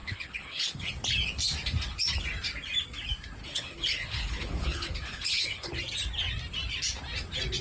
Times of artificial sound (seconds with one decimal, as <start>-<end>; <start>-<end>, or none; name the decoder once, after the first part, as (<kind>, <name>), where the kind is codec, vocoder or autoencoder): 0.0-0.9 (codec, HILCodec); 3.4-5.8